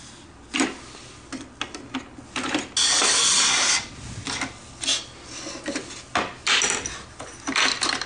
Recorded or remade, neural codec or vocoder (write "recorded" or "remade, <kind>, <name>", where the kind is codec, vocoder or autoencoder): recorded